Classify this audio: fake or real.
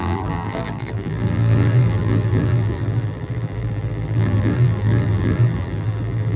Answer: fake